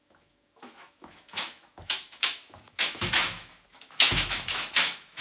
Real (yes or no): no